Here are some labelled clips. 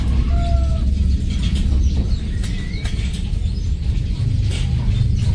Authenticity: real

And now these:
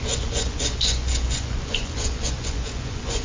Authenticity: fake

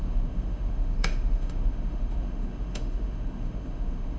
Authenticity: fake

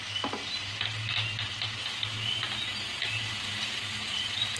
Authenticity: real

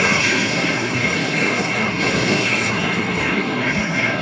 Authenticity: fake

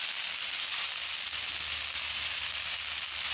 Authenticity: real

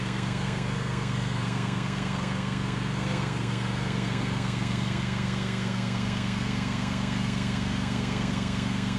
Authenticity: fake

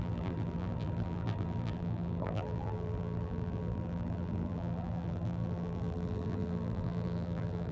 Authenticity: fake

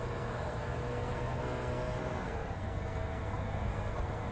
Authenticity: fake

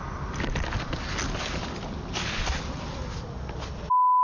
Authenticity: real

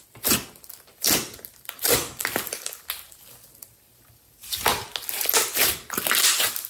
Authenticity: real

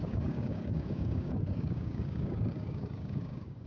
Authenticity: fake